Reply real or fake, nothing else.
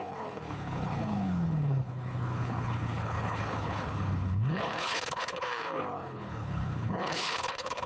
fake